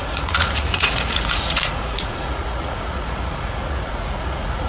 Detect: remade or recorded remade